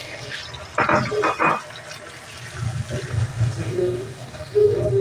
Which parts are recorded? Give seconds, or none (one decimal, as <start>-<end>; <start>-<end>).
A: 0.4-3.1